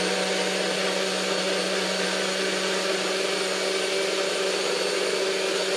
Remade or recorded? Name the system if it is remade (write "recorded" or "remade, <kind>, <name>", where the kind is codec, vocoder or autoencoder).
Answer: recorded